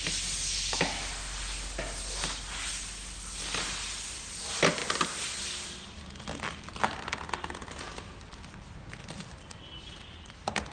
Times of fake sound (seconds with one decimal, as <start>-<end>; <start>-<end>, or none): none